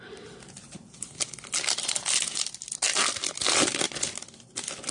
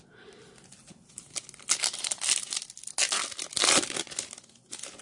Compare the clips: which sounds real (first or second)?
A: second